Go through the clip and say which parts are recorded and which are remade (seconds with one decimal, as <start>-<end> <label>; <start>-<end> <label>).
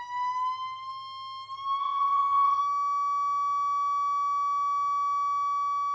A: 0.0-1.8 recorded; 1.8-2.6 remade; 2.6-5.9 recorded